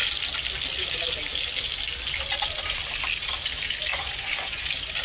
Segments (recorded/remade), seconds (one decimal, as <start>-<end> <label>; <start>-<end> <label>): 0.0-3.9 recorded; 3.9-4.6 remade; 4.6-5.0 recorded